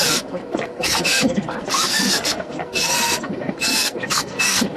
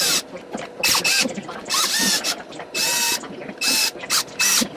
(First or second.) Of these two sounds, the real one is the second